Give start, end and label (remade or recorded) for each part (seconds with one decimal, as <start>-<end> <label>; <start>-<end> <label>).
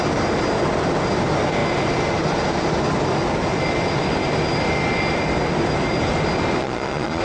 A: 0.0-6.6 recorded; 6.6-7.2 remade